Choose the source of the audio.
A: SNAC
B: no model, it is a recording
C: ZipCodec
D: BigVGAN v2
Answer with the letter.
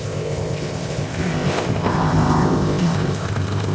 C